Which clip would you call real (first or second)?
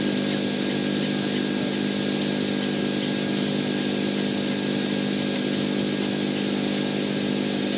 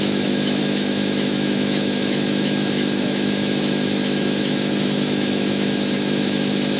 first